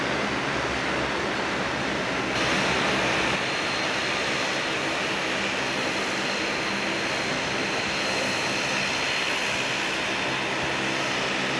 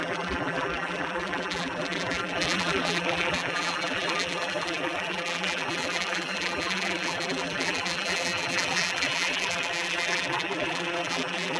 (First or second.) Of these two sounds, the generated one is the second